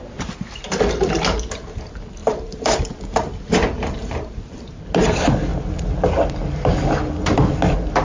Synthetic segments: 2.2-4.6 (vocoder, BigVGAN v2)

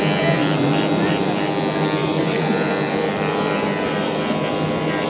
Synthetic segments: 0.4-1.6 (vocoder, BigVGAN v2); 2.0-5.1

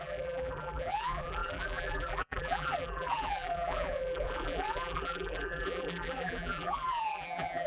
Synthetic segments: 0.0-7.7 (vocoder, BigVGAN v2)

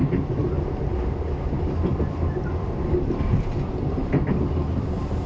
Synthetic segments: 1.9-4.1 (vocoder, BigVGAN v2)

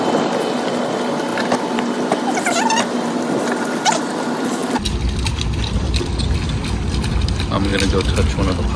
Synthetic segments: 1.3-3.1 (vocoder, BigVGAN v2); 4.6-6.1; 7.7-8.8

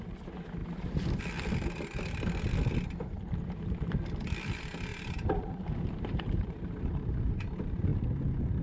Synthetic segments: 0.6-1.2 (vocoder, BigVGAN v2); 4.9-7.3